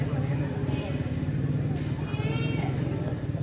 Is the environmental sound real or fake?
real